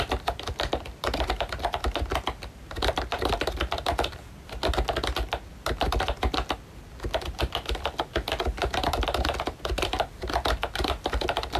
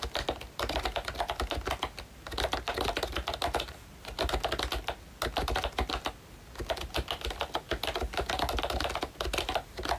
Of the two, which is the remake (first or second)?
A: first